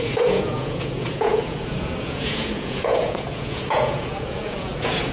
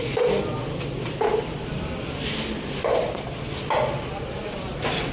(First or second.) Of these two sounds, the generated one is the first